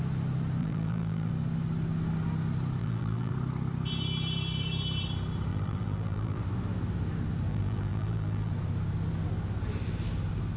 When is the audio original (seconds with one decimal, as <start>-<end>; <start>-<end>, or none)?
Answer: 0.0-0.6; 1.3-2.8; 3.3-5.5; 6.4-7.5; 8.5-10.6